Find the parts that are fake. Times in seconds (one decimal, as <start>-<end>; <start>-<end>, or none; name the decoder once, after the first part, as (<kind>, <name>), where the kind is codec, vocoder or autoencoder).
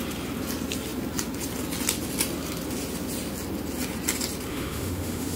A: 4.5-5.4 (autoencoder, DAC-VAE)